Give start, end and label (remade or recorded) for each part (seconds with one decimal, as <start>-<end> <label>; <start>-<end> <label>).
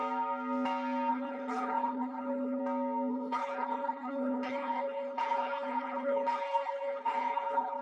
0.0-1.1 recorded; 1.1-2.6 remade; 2.6-3.1 recorded; 3.1-7.8 remade